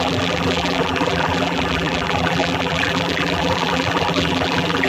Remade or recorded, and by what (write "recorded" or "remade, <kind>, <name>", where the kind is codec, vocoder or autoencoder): remade, vocoder, BigVGAN v2